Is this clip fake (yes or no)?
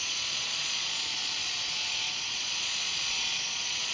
yes